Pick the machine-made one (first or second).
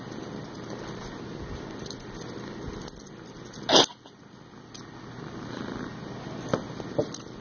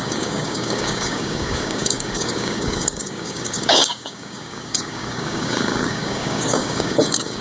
second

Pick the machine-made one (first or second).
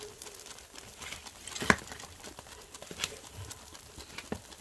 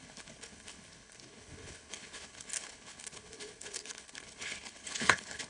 second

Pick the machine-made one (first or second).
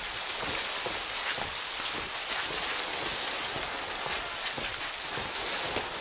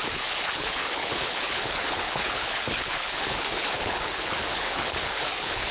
second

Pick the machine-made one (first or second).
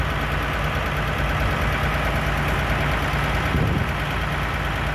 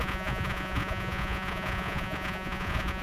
second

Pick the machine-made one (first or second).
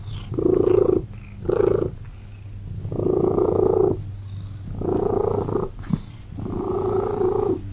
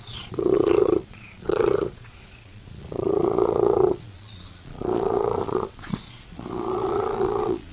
second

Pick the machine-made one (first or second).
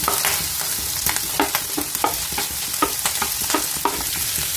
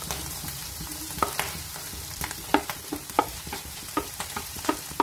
second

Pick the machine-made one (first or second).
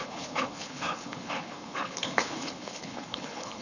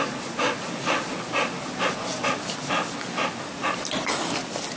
first